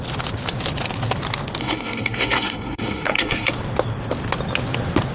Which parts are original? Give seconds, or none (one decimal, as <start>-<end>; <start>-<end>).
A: 0.0-1.6; 3.5-5.1